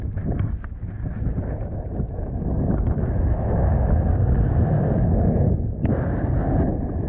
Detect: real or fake real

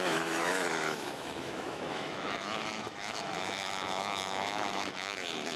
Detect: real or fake fake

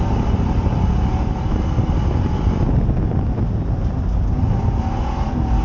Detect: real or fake real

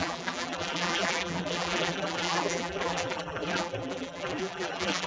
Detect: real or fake fake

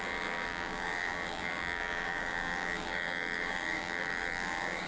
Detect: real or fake fake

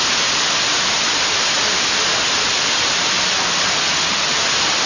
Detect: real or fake real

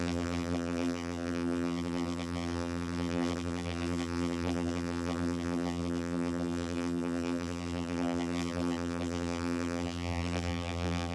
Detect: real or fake fake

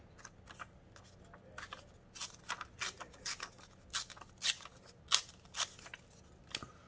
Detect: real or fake real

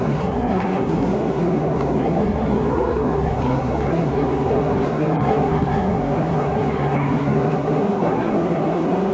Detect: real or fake fake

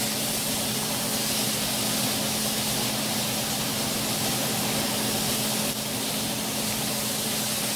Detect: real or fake real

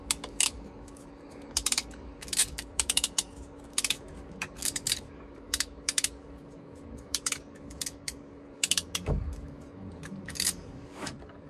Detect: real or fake fake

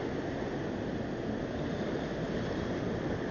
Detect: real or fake real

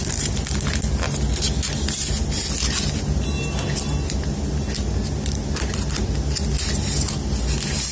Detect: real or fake real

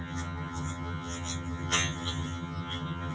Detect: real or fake fake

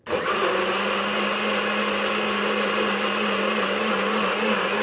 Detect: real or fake real